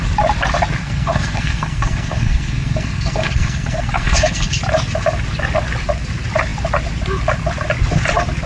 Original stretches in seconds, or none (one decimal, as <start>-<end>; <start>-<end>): 0.0-0.8; 4.6-8.5